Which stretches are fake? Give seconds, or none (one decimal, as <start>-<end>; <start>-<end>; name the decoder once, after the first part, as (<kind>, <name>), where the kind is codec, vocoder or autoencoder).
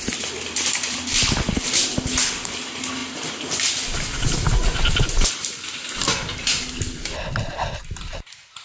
none